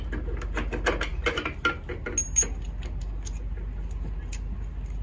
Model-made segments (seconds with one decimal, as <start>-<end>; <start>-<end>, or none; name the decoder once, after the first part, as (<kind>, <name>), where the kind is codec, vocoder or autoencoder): none